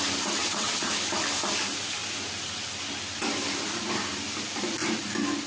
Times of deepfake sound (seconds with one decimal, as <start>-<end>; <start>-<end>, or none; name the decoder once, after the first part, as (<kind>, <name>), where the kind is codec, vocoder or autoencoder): 0.4-0.9 (vocoder, WaveNeXt)